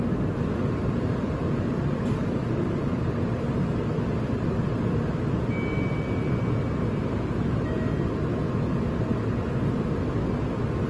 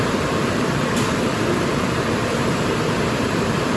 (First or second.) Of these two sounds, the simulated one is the second